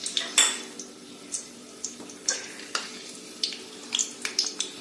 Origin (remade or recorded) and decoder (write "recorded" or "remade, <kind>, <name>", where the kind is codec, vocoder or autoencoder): remade, vocoder, BigVGAN v2